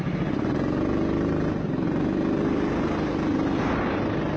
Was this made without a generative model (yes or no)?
yes